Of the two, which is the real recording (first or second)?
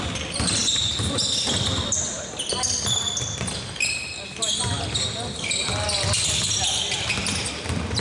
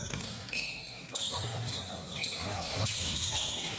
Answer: first